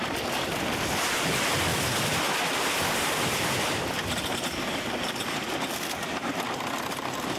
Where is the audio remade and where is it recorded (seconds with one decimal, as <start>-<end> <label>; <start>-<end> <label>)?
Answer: 0.0-1.7 recorded; 1.7-6.1 remade; 6.1-7.4 recorded